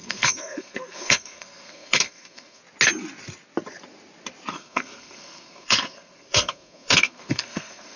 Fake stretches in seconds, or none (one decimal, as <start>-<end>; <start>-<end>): 0.0-2.6; 4.5-8.0

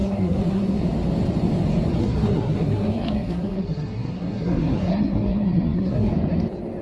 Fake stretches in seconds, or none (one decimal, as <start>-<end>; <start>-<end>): 0.0-0.8; 2.0-6.1

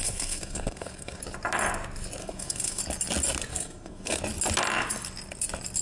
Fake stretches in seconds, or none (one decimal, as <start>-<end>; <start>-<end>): 0.0-1.2; 2.2-2.8; 3.5-4.2

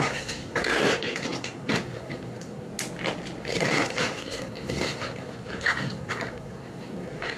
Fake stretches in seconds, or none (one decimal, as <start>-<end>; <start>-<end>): 0.0-2.7; 3.4-7.4

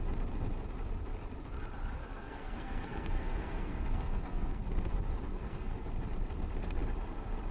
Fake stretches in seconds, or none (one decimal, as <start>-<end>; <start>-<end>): 2.0-4.6; 5.3-5.9

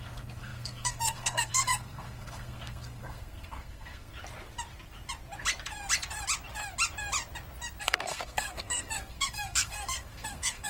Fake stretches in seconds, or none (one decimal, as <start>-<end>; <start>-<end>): 0.0-4.1; 7.8-10.7